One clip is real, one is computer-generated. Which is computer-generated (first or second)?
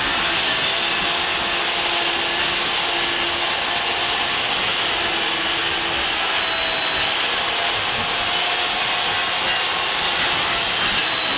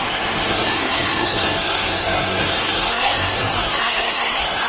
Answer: second